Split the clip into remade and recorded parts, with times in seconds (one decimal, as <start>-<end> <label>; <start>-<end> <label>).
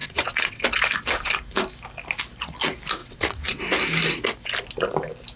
0.0-0.6 remade; 0.6-3.0 recorded; 3.0-3.6 remade; 3.6-5.4 recorded